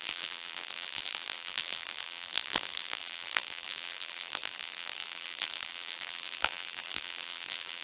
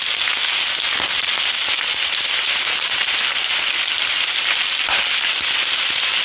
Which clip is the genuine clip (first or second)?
second